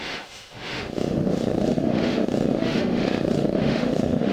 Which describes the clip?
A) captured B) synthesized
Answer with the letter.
B